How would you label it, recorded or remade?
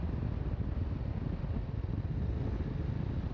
recorded